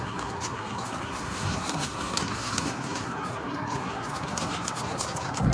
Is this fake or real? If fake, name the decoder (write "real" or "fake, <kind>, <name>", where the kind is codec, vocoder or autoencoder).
fake, codec, SNAC